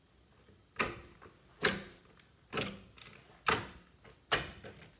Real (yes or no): yes